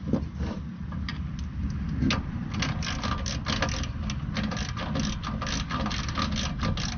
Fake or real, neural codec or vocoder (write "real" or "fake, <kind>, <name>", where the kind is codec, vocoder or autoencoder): real